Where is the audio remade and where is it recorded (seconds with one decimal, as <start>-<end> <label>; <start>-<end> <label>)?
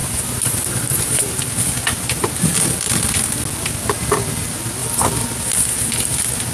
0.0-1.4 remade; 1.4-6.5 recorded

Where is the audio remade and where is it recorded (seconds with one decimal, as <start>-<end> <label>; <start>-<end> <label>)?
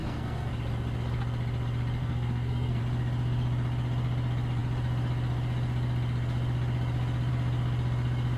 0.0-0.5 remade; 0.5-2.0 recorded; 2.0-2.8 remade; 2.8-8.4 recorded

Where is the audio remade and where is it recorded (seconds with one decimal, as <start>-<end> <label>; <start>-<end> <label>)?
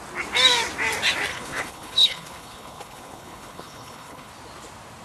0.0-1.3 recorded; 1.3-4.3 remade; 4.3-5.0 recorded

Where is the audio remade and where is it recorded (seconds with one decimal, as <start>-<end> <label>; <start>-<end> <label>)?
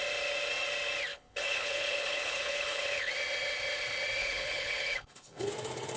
0.0-1.1 recorded; 1.1-3.1 remade; 3.1-4.2 recorded; 4.2-5.5 remade; 5.5-6.0 recorded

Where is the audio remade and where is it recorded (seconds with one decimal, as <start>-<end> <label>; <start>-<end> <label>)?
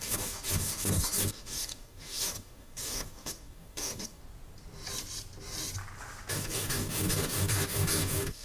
0.0-4.2 remade; 4.2-6.3 recorded; 6.3-8.4 remade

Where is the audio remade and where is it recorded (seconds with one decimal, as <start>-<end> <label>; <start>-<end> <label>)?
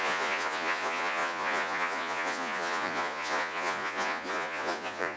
0.0-5.2 remade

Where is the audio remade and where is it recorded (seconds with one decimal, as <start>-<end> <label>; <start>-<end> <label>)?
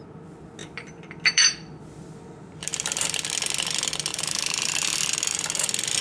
0.0-0.6 recorded; 0.6-3.3 remade; 3.3-4.1 recorded; 4.1-4.6 remade; 4.6-6.0 recorded